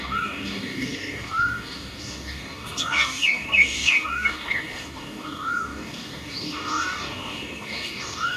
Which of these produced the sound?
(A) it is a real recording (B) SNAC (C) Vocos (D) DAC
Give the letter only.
D